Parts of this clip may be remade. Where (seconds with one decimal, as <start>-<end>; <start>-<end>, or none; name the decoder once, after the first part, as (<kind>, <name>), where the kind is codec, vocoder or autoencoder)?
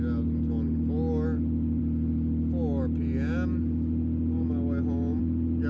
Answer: none